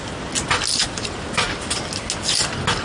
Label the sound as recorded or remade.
recorded